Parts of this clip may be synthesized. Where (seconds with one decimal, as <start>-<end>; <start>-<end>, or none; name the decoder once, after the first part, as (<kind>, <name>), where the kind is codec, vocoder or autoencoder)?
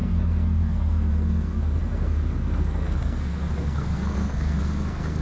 0.0-5.2 (codec, SNAC)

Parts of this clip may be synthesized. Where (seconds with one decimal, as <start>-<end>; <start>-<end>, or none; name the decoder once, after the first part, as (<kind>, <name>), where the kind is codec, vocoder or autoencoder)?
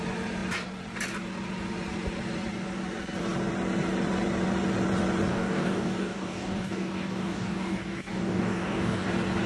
5.3-9.1 (codec, DAC)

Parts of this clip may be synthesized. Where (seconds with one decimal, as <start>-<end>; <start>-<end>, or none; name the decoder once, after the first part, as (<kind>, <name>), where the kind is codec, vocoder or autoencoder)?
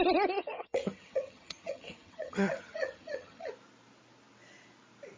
0.4-3.5 (vocoder, HiFi-GAN)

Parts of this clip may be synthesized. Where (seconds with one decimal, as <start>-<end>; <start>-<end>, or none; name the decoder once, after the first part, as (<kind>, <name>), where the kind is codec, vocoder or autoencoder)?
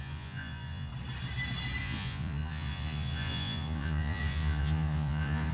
0.0-0.9 (vocoder, Vocos); 1.8-5.5